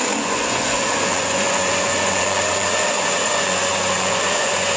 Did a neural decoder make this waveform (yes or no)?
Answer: yes